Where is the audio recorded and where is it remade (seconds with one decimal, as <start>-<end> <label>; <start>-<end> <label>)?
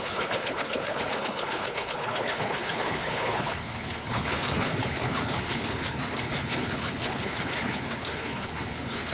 0.0-9.1 remade